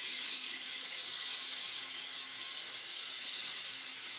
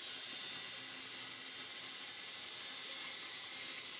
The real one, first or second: second